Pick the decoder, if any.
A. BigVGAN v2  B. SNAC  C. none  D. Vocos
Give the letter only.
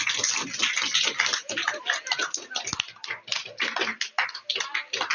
C